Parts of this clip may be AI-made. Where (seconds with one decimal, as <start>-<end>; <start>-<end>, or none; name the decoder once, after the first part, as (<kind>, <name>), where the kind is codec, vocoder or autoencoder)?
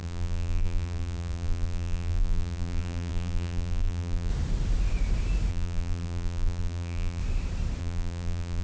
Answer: 0.0-4.3 (vocoder, BigVGAN v2); 5.5-7.2; 7.8-8.6